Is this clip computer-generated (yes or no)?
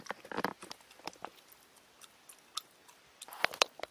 no